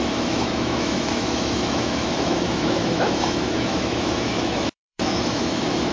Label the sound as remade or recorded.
remade